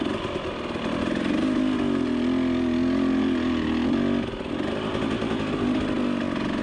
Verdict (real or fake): real